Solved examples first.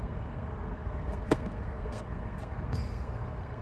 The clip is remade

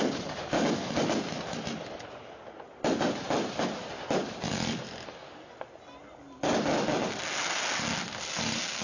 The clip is recorded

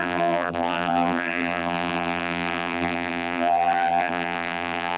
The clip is remade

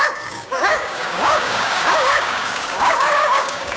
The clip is remade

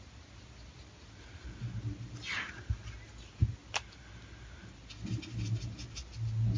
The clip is recorded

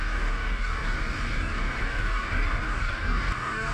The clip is remade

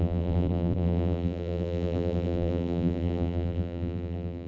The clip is remade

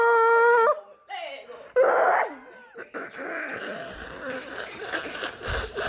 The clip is recorded